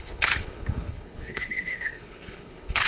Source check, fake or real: fake